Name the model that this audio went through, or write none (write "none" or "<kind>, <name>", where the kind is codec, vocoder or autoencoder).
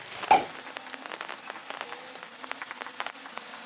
none